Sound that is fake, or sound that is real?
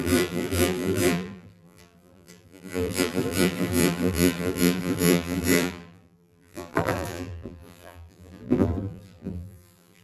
fake